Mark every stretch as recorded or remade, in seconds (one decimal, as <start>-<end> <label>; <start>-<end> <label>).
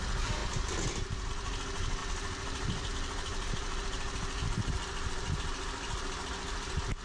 0.0-2.0 recorded; 2.0-2.9 remade; 2.9-7.0 recorded